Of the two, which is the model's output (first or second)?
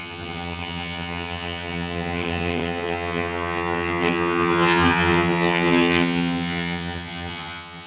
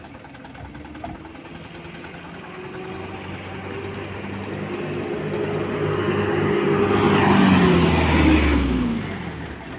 first